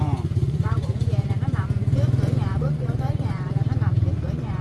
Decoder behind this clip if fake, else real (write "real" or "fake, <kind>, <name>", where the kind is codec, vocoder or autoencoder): fake, vocoder, Vocos